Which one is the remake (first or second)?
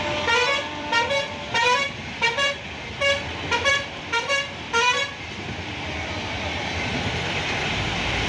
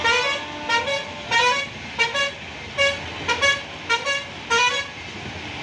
first